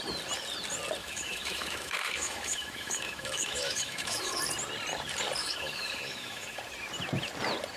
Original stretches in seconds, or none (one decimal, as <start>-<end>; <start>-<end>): 0.0-1.0; 4.4-5.4; 6.6-7.8